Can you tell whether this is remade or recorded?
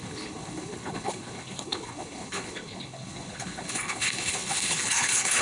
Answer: remade